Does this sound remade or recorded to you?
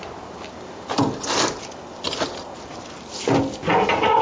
recorded